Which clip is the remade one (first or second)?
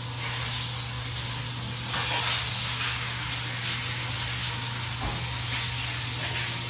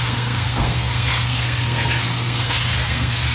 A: second